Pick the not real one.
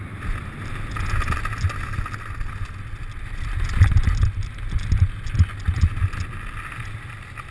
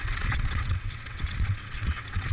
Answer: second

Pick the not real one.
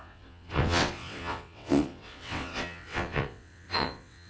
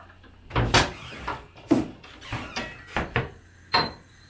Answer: first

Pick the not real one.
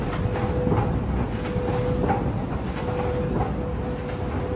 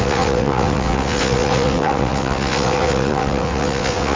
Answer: second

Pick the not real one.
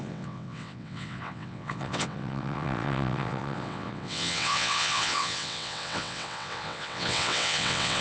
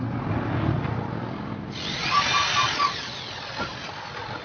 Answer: first